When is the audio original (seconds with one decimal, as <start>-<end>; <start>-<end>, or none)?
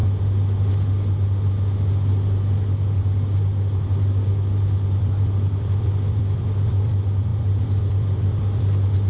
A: 0.0-4.9